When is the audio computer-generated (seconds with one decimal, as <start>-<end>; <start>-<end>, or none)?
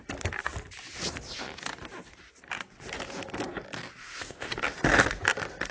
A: 4.0-4.5